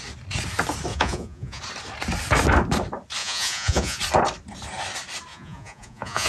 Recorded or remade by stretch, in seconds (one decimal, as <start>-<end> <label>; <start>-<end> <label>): 0.0-0.9 recorded; 0.9-1.6 remade; 1.6-3.2 recorded; 3.2-4.0 remade; 4.0-5.3 recorded; 5.3-6.3 remade